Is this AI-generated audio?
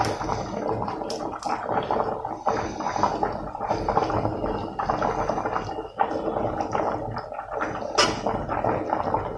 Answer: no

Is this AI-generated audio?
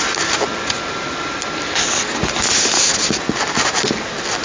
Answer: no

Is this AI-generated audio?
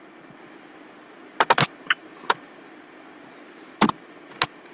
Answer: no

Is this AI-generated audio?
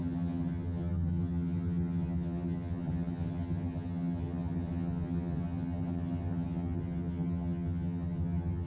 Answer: yes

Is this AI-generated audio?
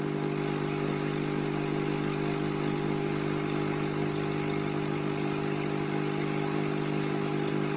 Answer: no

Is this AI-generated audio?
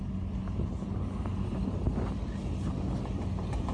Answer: no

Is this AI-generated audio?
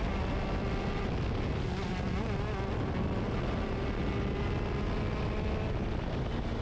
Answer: no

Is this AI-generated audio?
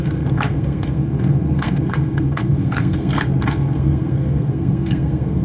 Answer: yes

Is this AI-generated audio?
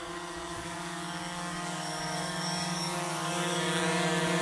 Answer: yes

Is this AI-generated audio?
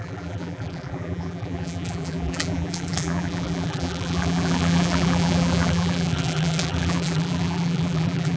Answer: yes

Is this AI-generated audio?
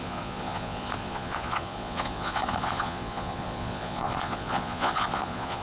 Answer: yes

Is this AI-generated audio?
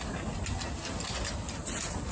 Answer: no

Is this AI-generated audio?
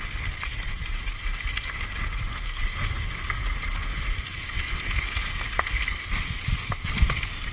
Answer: no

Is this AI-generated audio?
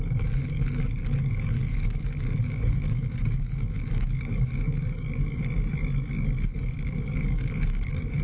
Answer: yes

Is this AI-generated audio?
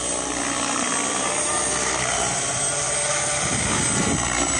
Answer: no